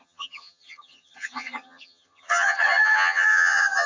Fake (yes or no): yes